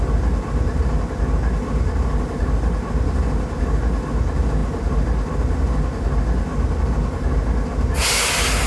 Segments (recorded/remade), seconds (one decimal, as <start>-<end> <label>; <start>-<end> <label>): 0.0-8.7 recorded